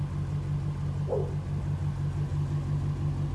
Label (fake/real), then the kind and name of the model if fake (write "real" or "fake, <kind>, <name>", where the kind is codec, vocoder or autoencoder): real